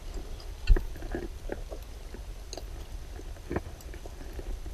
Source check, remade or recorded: recorded